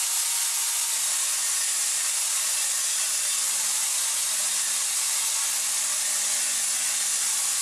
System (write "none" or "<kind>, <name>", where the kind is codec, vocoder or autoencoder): none